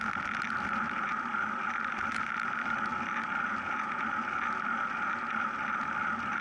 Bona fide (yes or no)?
yes